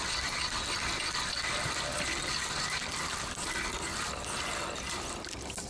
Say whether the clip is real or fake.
real